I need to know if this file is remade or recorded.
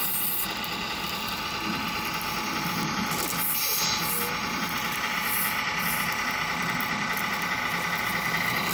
recorded